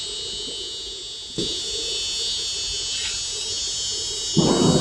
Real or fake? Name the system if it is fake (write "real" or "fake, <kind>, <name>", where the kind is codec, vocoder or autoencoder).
real